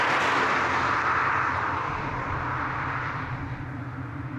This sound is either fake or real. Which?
fake